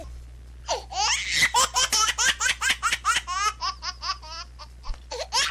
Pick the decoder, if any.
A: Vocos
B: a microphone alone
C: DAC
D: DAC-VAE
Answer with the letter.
B